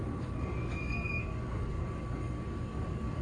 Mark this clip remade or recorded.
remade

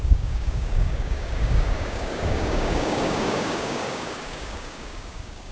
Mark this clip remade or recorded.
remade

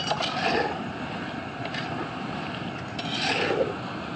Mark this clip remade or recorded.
recorded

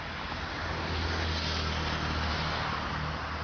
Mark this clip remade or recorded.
recorded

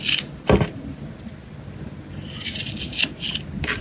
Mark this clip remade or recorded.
recorded